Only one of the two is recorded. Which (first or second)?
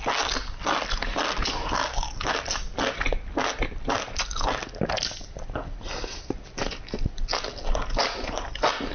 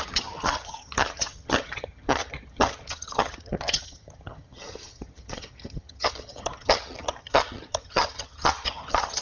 first